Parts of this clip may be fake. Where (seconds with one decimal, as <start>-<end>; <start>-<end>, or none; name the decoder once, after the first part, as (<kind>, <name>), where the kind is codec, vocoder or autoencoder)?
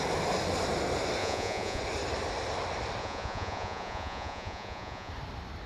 1.2-1.8 (vocoder, Vocos); 3.0-5.1